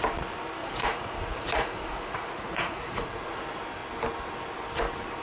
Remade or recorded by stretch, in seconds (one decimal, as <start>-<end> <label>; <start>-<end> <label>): 0.0-0.6 recorded; 0.6-3.4 remade; 3.4-5.2 recorded

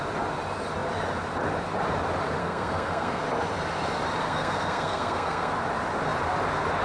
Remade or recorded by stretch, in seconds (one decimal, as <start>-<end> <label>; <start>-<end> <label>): 0.0-2.4 recorded; 2.4-3.2 remade; 3.2-4.2 recorded; 4.2-5.5 remade; 5.5-6.8 recorded

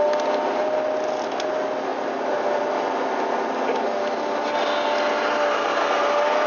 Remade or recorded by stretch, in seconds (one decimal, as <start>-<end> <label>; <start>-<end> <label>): 0.0-6.5 recorded

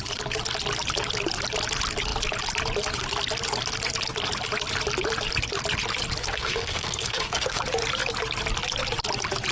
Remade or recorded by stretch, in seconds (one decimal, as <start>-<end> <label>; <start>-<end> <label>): 0.0-6.2 recorded; 6.2-7.6 remade; 7.6-9.5 recorded

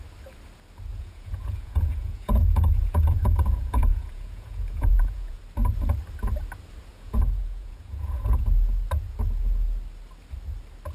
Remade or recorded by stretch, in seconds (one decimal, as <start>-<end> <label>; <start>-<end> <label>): 0.0-0.9 recorded; 0.9-5.4 remade; 5.4-6.9 recorded; 6.9-8.4 remade; 8.4-10.9 recorded